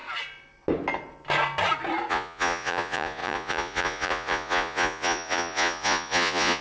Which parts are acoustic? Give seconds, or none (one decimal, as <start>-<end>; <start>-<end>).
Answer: 0.0-2.1